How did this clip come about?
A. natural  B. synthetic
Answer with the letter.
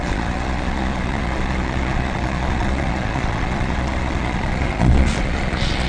B